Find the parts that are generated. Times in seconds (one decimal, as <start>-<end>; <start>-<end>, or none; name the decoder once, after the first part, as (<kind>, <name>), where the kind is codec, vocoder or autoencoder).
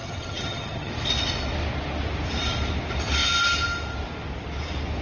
0.0-0.9 (vocoder, HiFi-GAN)